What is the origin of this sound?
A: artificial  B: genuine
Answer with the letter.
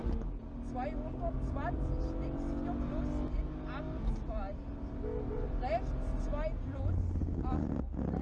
B